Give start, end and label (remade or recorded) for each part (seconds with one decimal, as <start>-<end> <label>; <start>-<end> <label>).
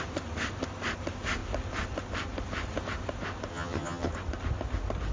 0.0-3.5 recorded; 3.5-4.1 remade; 4.1-5.1 recorded